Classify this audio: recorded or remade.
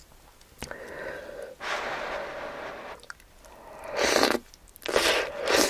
recorded